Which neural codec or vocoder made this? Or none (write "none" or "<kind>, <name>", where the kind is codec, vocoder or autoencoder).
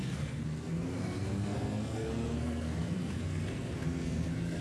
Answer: codec, SNAC